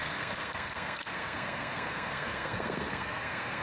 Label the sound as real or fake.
fake